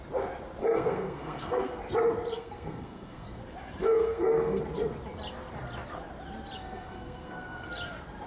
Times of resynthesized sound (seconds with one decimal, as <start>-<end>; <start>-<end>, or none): 0.6-1.7; 2.3-3.4; 3.8-4.6; 6.6-7.7